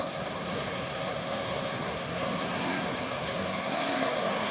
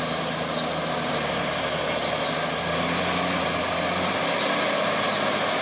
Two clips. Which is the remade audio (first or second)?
first